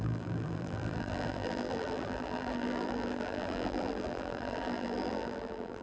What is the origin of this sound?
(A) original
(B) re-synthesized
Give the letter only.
B